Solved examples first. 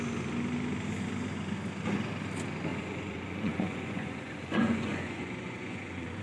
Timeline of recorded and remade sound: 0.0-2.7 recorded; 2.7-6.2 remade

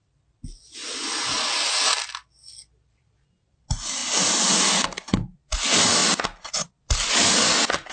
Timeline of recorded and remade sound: 0.0-7.9 recorded